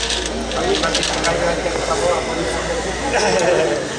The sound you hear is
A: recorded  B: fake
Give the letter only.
A